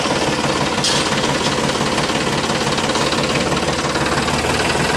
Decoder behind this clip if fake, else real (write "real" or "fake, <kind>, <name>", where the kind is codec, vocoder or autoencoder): real